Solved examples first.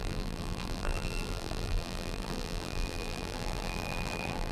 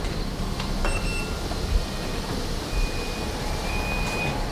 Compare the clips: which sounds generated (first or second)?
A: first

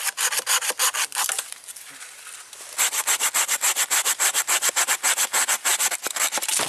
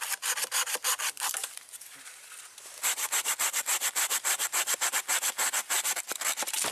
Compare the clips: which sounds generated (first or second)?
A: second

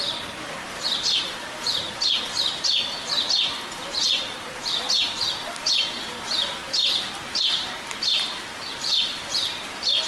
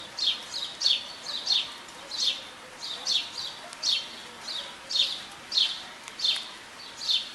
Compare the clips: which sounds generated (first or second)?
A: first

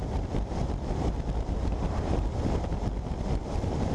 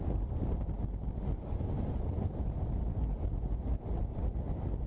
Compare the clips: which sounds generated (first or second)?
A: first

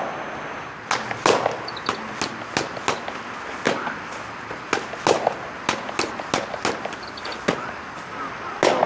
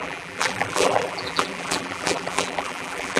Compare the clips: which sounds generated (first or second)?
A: second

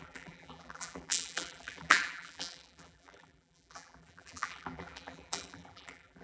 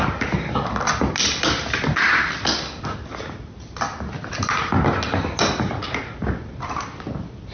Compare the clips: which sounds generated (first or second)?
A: first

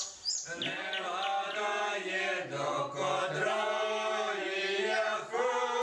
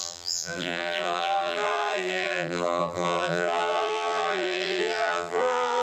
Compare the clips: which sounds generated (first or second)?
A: second